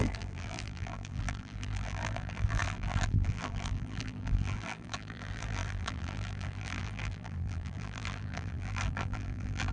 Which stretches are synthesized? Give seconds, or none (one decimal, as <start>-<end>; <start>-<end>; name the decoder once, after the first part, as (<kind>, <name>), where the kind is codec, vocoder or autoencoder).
0.0-9.7 (vocoder, BigVGAN v2)